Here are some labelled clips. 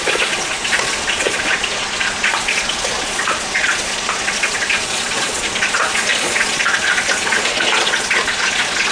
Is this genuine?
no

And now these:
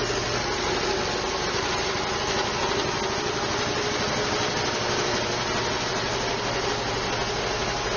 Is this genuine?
yes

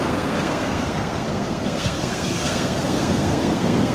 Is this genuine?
no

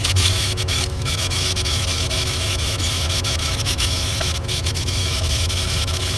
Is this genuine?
no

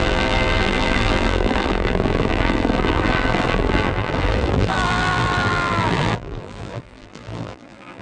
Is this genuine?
no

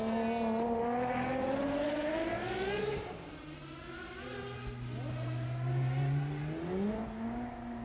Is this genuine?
yes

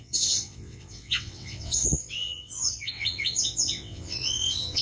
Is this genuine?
no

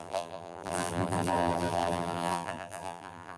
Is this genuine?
no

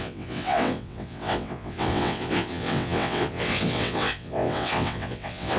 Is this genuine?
no